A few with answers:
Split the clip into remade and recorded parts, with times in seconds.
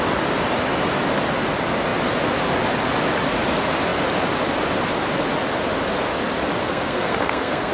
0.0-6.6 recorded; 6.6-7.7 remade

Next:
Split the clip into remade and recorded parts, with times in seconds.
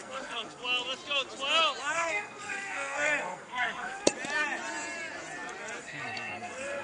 0.0-0.6 remade; 0.6-1.8 recorded; 1.8-4.1 remade; 4.1-5.8 recorded; 5.8-6.8 remade